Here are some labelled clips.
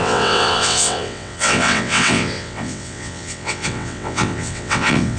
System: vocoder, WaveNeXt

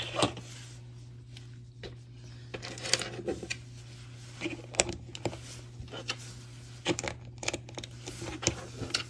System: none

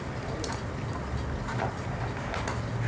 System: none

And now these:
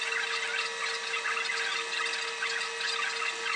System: none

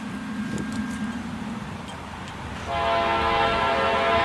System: none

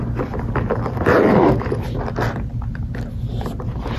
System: none